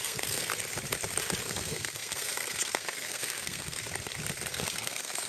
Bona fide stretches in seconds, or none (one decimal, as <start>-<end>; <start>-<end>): 0.5-1.4; 3.8-4.5